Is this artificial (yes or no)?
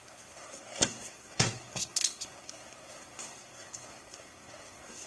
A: yes